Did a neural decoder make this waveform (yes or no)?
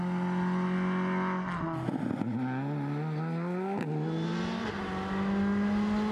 no